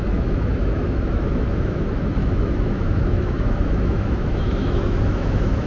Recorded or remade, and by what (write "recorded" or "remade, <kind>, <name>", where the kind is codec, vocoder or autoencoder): remade, autoencoder, DAC-VAE